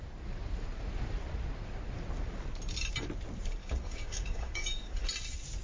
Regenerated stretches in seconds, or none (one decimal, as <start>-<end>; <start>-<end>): 3.6-5.0